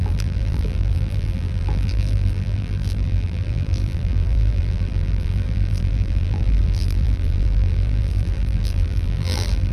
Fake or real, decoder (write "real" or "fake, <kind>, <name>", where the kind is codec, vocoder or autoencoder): fake, vocoder, BigVGAN v2